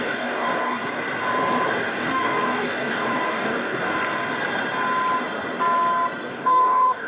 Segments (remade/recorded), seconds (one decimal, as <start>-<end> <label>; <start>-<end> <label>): 0.0-0.8 remade; 0.8-1.8 recorded; 1.8-4.0 remade; 4.0-6.3 recorded; 6.3-7.1 remade

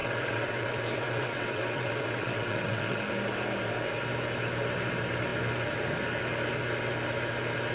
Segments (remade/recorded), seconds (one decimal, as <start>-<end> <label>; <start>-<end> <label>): 0.0-3.1 remade; 3.1-7.7 recorded

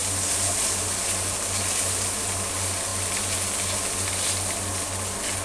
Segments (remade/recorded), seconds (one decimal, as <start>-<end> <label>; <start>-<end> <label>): 0.0-5.4 recorded